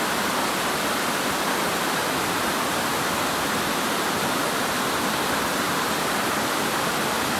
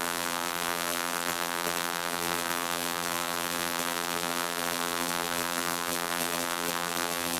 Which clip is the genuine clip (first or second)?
first